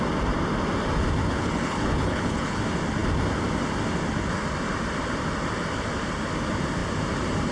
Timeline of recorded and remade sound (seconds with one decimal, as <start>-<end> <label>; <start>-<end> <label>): 0.0-1.2 recorded; 1.2-2.6 remade; 2.6-7.5 recorded